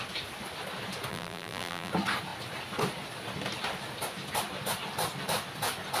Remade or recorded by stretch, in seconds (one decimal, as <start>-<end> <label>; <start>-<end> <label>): 0.0-1.1 recorded; 1.1-1.9 remade; 1.9-6.0 recorded